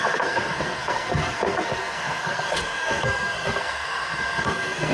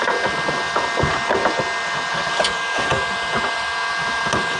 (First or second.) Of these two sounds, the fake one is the first